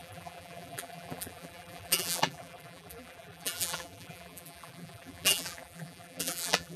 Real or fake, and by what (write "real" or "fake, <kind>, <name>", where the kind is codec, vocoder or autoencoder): fake, vocoder, BigVGAN v2